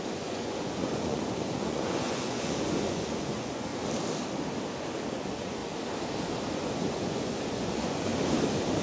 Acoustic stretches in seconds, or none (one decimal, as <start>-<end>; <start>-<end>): 3.7-5.1; 5.6-6.5; 8.1-8.8